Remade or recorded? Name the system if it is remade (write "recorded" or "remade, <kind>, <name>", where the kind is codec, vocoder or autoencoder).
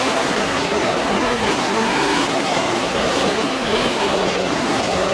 remade, codec, SNAC